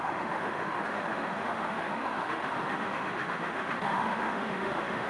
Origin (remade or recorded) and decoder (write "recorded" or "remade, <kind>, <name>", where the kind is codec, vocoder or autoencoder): remade, autoencoder, DAC-VAE